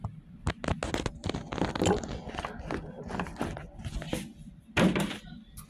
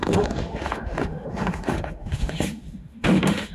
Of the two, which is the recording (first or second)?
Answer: first